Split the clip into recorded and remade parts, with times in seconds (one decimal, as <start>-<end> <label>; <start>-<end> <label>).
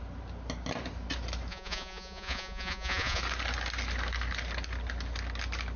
0.0-1.5 recorded; 1.5-3.2 remade; 3.2-5.8 recorded